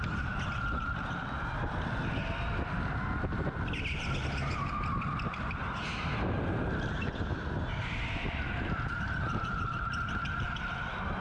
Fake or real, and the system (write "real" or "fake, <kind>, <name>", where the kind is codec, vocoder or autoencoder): real